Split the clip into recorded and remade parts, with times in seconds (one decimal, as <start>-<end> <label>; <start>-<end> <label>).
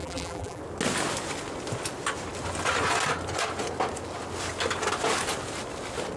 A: 0.0-0.6 remade; 0.6-6.2 recorded